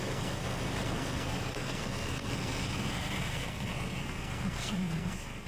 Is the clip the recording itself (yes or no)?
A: no